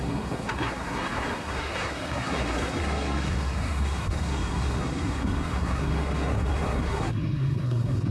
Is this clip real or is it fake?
fake